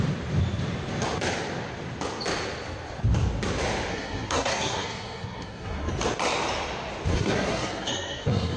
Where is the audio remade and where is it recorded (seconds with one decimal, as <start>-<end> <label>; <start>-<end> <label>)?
0.0-3.9 recorded; 3.9-5.9 remade; 5.9-7.1 recorded; 7.1-8.6 remade